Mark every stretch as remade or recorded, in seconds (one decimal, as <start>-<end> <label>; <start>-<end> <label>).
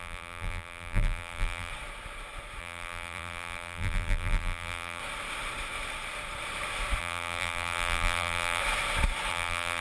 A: 0.0-1.7 remade; 1.7-2.6 recorded; 2.6-5.0 remade; 5.0-7.0 recorded; 7.0-8.6 remade; 8.6-9.3 recorded; 9.3-9.8 remade